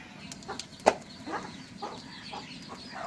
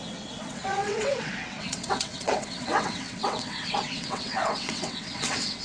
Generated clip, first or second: second